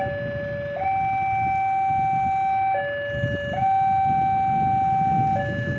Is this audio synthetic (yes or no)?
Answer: no